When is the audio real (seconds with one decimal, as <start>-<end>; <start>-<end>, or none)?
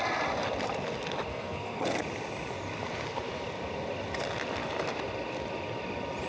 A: 0.0-1.3; 2.0-6.3